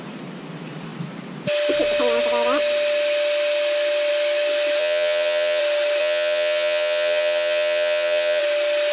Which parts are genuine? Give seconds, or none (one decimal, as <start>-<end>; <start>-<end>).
0.0-4.8; 5.6-6.0; 8.4-8.9